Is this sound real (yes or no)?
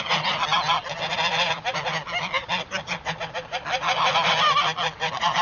yes